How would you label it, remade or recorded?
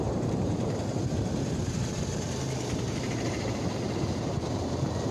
remade